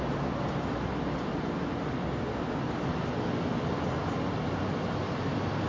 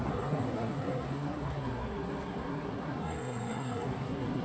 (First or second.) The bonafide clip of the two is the first